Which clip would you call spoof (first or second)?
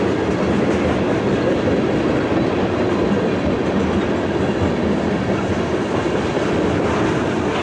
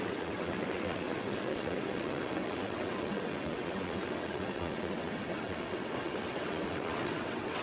second